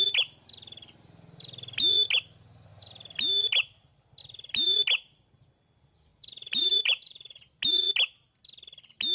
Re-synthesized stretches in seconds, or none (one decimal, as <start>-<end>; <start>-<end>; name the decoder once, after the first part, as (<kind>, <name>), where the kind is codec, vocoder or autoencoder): 6.1-7.6 (vocoder, BigVGAN v2)